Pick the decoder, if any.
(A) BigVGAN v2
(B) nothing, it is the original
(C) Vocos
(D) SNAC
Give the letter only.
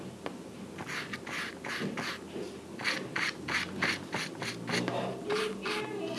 B